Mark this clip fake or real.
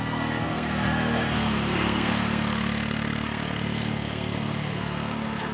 fake